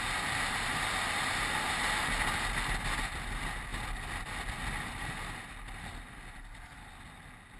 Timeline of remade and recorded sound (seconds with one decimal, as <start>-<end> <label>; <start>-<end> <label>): 0.0-7.6 recorded